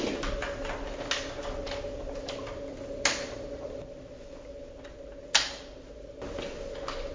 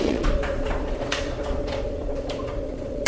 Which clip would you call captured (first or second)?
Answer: first